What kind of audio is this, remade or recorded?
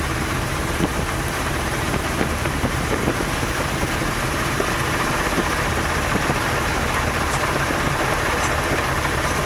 remade